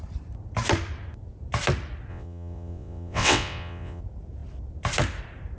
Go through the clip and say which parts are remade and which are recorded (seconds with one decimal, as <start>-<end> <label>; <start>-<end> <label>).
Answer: 0.0-2.1 recorded; 2.1-4.0 remade; 4.0-5.6 recorded